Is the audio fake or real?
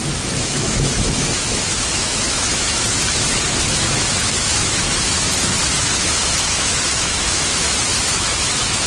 fake